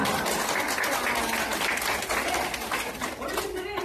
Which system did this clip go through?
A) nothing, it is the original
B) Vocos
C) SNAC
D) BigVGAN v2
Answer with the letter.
A